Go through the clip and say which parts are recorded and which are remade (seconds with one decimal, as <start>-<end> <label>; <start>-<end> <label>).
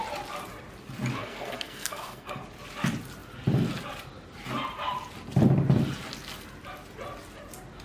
0.0-1.2 recorded; 1.2-2.4 remade; 2.4-7.8 recorded